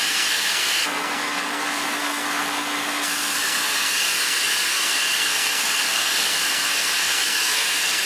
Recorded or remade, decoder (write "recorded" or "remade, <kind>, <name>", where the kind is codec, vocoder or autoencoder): remade, codec, SNAC